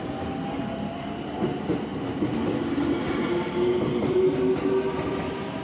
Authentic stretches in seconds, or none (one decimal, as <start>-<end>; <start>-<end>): 0.0-5.6